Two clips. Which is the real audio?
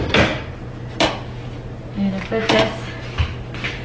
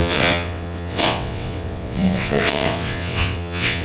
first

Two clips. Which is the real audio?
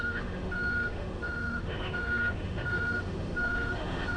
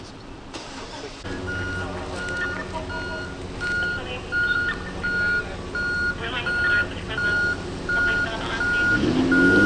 second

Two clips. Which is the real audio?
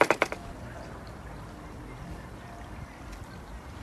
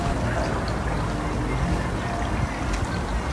second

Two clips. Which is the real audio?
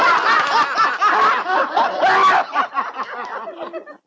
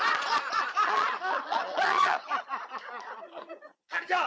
first